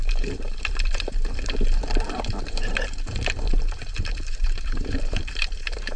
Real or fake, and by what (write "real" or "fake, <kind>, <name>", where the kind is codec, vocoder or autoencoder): fake, vocoder, BigVGAN v2